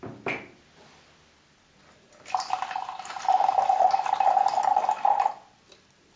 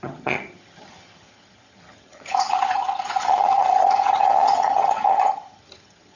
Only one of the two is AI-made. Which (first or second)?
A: second